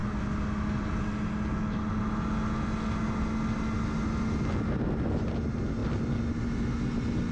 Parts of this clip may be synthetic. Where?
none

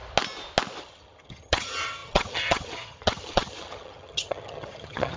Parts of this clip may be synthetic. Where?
0.8-5.2

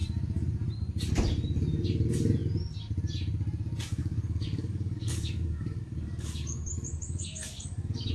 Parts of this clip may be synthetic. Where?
4.0-8.1

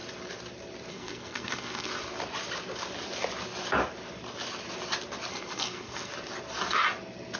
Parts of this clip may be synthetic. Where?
0.9-1.9; 5.3-6.1

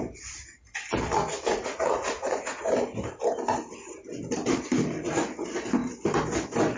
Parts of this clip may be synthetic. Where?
1.3-2.7

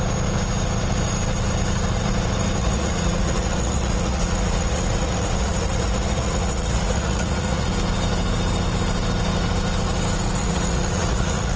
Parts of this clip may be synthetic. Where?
2.6-7.7; 10.4-11.6

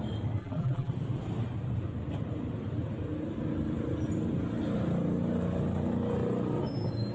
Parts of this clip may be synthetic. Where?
0.4-0.9